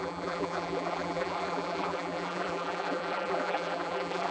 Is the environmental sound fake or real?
fake